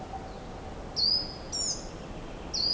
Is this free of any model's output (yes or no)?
yes